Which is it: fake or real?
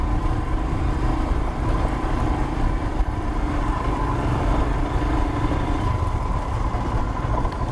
fake